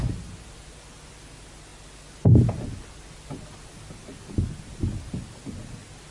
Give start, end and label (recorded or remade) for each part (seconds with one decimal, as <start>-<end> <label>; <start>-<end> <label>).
0.0-6.1 recorded